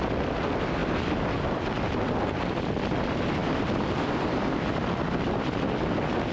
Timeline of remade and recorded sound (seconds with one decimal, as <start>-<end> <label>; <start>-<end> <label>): 0.0-6.3 remade